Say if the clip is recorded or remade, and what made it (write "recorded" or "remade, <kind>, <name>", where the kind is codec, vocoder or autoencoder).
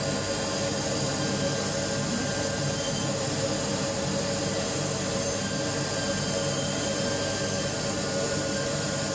recorded